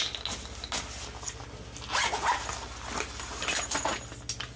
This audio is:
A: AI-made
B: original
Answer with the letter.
B